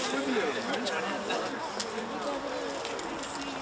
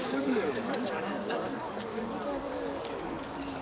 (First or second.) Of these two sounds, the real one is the first